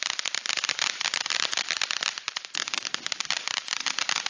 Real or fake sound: fake